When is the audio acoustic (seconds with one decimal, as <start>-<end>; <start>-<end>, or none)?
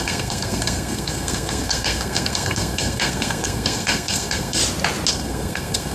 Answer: 4.6-5.1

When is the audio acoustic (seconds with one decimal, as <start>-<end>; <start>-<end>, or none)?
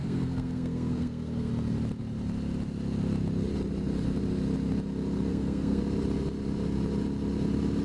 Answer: 1.5-5.3; 5.8-7.8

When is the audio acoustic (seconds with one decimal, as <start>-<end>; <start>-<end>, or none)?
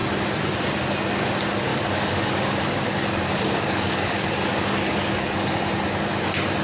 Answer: 0.0-1.7; 5.7-6.6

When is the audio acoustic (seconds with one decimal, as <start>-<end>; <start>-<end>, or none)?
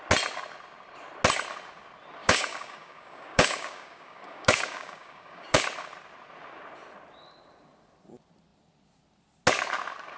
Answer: 0.0-2.2; 5.6-10.2